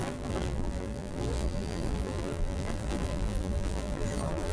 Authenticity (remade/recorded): remade